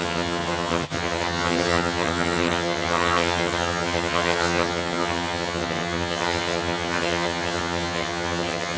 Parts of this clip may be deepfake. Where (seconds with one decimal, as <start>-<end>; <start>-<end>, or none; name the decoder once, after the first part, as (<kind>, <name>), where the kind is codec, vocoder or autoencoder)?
0.0-8.8 (vocoder, HiFi-GAN)